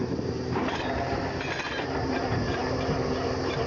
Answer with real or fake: fake